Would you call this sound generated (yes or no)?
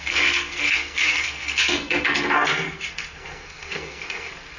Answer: yes